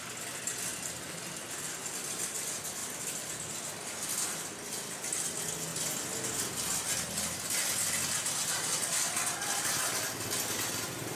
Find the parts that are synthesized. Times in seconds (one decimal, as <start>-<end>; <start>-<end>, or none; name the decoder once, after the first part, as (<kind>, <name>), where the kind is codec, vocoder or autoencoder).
0.7-1.5 (vocoder, BigVGAN v2); 2.8-3.3